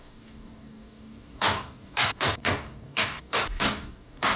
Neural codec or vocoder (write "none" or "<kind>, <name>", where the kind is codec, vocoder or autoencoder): codec, DAC